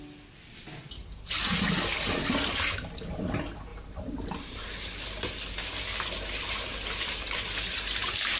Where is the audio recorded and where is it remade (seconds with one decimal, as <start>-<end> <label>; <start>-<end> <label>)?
0.0-3.7 recorded; 3.7-4.3 remade; 4.3-6.7 recorded; 6.7-8.4 remade